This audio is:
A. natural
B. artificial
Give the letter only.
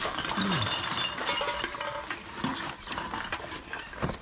A